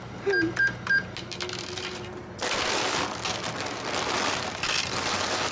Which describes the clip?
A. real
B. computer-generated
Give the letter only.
A